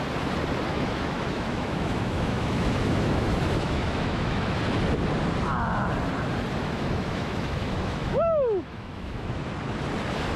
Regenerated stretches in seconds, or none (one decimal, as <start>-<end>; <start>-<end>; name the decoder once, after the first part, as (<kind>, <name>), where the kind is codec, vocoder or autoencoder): 0.7-4.6 (autoencoder, DAC-VAE); 6.6-9.5